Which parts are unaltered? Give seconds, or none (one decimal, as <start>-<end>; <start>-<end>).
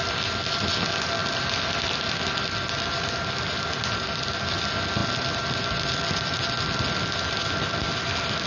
0.0-8.5